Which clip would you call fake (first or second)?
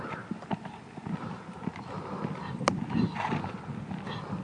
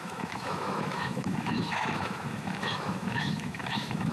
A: second